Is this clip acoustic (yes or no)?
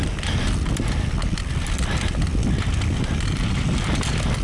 yes